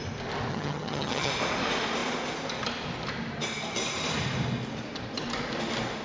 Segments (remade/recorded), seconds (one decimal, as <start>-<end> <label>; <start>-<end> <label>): 0.0-0.5 recorded; 0.5-1.3 remade; 1.3-6.0 recorded